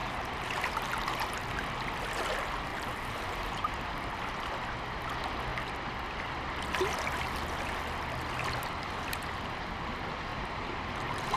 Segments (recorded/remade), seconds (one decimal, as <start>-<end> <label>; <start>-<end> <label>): 0.0-0.7 remade; 0.7-2.7 recorded; 2.7-4.0 remade; 4.0-10.3 recorded; 10.3-10.8 remade; 10.8-11.4 recorded